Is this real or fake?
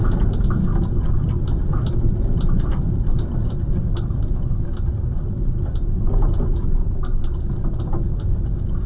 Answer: real